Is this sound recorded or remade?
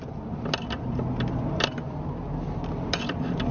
recorded